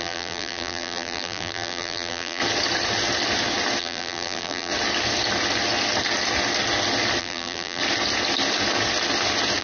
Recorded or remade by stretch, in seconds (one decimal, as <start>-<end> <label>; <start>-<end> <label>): 0.0-2.4 remade; 2.4-3.8 recorded; 3.8-4.7 remade; 4.7-7.2 recorded; 7.2-7.8 remade; 7.8-9.6 recorded